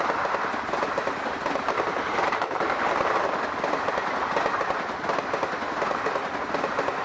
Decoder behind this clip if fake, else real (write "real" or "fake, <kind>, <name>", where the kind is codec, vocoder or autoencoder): real